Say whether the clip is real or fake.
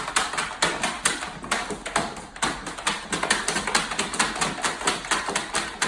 real